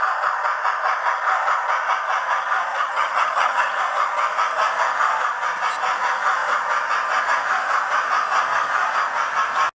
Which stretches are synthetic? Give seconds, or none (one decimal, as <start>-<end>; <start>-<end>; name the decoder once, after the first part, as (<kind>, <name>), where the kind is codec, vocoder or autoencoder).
2.7-3.8 (vocoder, HiFi-GAN)